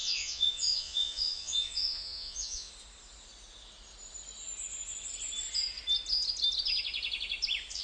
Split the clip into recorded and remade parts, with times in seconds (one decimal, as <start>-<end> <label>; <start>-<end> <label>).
0.0-2.7 remade; 2.7-7.8 recorded